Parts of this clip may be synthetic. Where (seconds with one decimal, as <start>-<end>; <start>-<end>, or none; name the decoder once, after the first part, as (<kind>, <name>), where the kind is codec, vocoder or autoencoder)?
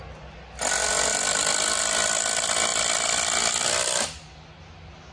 2.7-4.4 (vocoder, BigVGAN v2)